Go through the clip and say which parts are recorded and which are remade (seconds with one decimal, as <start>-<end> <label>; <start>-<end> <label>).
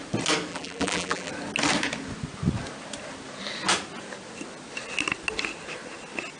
0.0-0.5 recorded; 0.5-1.3 remade; 1.3-6.4 recorded